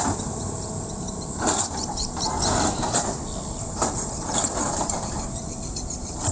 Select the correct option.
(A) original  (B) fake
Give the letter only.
B